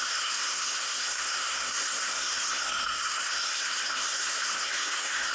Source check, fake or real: fake